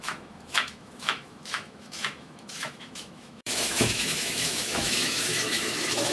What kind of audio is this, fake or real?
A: fake